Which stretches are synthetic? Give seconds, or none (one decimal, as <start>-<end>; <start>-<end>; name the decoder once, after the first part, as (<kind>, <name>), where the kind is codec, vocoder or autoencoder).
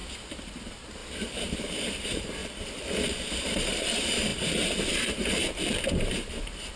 0.0-2.4 (vocoder, BigVGAN v2); 3.3-6.8